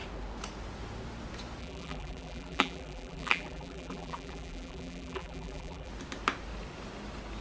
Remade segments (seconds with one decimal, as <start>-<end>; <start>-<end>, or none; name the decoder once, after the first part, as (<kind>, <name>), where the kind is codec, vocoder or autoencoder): 1.6-5.9 (vocoder, BigVGAN v2)